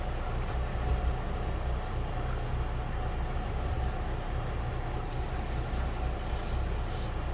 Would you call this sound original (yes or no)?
yes